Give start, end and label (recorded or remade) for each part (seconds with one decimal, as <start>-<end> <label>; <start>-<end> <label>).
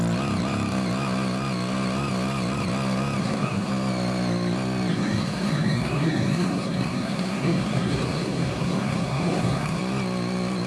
0.0-3.2 recorded; 3.2-3.7 remade; 3.7-4.9 recorded; 4.9-9.8 remade; 9.8-10.7 recorded